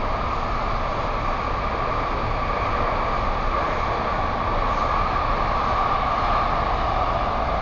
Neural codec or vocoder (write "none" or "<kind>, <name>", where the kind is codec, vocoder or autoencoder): none